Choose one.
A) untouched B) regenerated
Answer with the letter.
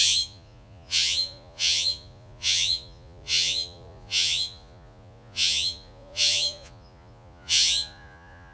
B